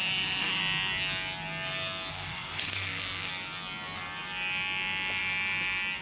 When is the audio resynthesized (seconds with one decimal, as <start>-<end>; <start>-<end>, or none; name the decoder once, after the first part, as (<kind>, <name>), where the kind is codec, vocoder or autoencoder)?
0.0-0.6 (codec, SNAC); 2.1-3.3